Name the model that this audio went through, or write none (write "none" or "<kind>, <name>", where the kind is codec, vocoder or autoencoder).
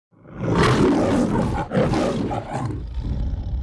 vocoder, BigVGAN v2